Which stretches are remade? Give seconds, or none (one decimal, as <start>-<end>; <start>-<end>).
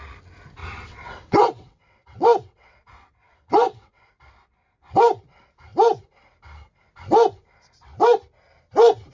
0.6-4.1